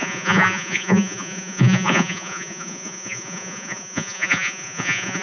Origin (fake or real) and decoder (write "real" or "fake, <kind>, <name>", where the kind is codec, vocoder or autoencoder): fake, vocoder, Vocos